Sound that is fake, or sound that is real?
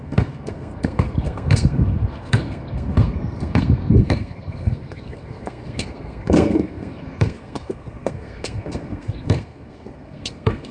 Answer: fake